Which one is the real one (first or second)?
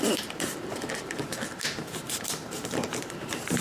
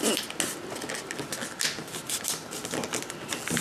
second